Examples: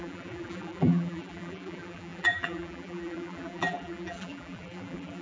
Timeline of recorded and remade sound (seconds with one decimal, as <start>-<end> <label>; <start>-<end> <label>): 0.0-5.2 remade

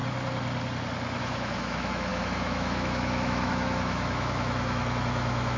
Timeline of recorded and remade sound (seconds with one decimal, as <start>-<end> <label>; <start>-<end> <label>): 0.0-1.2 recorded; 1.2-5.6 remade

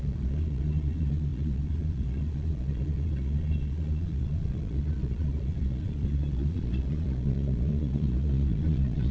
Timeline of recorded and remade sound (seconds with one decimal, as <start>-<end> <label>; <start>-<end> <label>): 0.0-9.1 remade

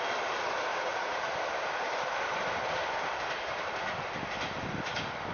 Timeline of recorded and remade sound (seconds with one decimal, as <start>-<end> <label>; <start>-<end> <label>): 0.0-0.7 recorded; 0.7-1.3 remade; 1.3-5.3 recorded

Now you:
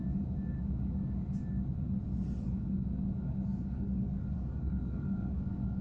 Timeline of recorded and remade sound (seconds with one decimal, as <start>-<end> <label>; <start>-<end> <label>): 0.0-3.5 recorded; 3.5-5.8 remade

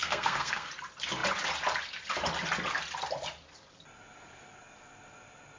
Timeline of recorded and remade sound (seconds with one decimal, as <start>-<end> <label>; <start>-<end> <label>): 0.0-0.7 remade; 0.7-5.6 recorded